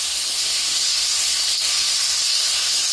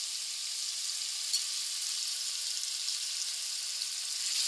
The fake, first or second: first